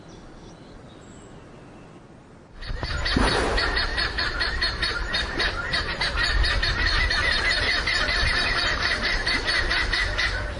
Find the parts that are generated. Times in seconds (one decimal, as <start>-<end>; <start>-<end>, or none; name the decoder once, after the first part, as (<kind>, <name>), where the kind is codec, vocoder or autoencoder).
3.9-6.0 (vocoder, BigVGAN v2); 7.2-9.3